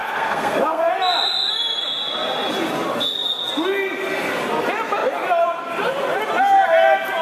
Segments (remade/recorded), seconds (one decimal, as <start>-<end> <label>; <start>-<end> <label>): 0.0-0.9 remade; 0.9-7.2 recorded